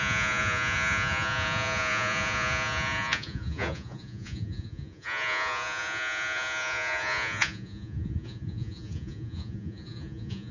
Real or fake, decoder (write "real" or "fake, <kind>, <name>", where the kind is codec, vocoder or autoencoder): fake, vocoder, Vocos